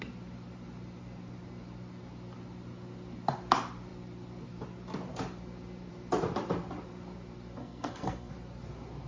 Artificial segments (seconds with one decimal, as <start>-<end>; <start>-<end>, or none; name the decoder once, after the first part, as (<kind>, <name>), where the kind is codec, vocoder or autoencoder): 7.6-8.3 (codec, SNAC)